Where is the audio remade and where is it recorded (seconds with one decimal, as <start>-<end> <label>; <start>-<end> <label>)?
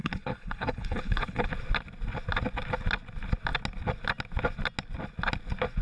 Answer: 0.0-1.5 remade; 1.5-5.8 recorded